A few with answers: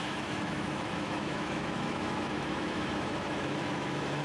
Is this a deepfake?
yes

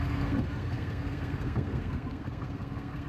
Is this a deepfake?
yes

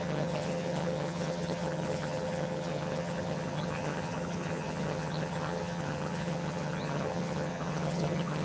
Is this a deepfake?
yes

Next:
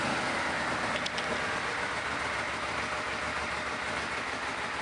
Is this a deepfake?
no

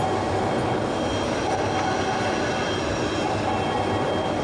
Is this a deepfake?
no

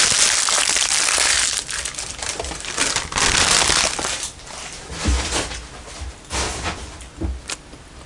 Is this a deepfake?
no